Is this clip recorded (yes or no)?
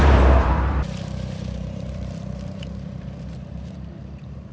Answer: no